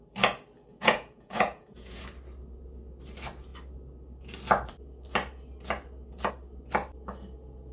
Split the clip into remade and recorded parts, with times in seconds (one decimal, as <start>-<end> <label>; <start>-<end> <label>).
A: 0.0-0.7 recorded; 0.7-2.0 remade; 2.0-7.7 recorded